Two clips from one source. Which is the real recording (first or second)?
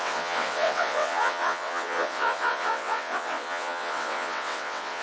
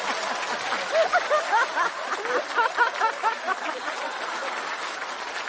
second